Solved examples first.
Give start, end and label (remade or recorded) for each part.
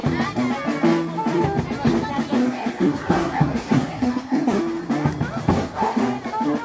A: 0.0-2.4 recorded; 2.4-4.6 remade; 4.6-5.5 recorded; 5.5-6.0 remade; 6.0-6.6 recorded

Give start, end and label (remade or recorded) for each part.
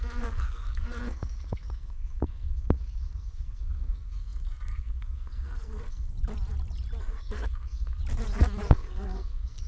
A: 0.0-6.1 remade; 6.1-7.0 recorded; 7.0-8.0 remade; 8.0-8.7 recorded; 8.7-9.7 remade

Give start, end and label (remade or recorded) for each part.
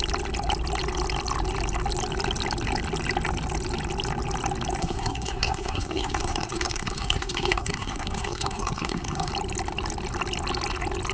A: 0.0-4.8 recorded; 4.8-9.3 remade; 9.3-11.1 recorded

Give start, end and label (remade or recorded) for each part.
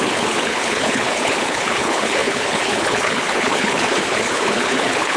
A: 0.0-5.2 remade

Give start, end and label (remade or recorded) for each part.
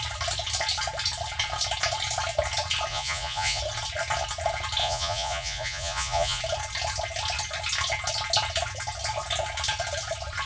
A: 0.0-2.9 recorded; 2.9-3.6 remade; 3.6-4.8 recorded; 4.8-6.4 remade; 6.4-10.5 recorded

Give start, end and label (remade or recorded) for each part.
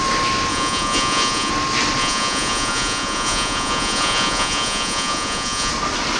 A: 0.0-0.5 recorded; 0.5-1.5 remade; 1.5-2.0 recorded; 2.0-5.7 remade; 5.7-6.2 recorded